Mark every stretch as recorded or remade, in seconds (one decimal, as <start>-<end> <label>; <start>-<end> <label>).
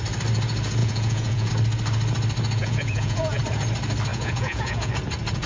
0.0-0.8 recorded; 0.8-1.5 remade; 1.5-2.6 recorded; 2.6-3.4 remade; 3.4-4.1 recorded; 4.1-4.9 remade; 4.9-5.5 recorded